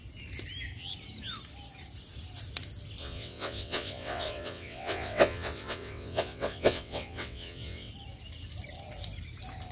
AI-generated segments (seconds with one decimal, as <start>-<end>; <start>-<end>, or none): 3.0-7.9